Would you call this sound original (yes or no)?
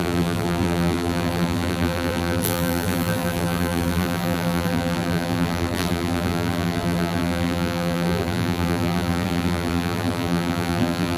no